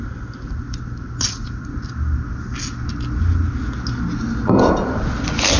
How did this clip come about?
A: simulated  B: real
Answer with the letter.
B